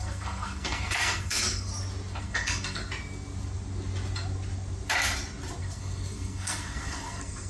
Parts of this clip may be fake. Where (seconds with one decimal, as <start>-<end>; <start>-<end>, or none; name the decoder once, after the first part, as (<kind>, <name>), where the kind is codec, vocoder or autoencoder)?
0.0-1.7 (codec, SNAC); 2.2-2.8; 5.6-7.5

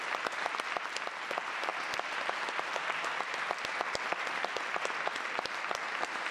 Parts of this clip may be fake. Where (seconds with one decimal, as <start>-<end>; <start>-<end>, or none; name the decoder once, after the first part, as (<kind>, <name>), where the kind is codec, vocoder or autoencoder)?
none